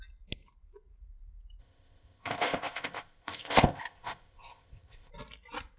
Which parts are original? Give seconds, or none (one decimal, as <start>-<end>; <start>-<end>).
0.0-1.6; 5.1-5.8